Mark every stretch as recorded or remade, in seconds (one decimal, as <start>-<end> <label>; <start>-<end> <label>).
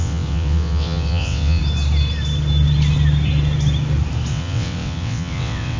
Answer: 0.0-1.6 remade; 1.6-4.3 recorded; 4.3-5.8 remade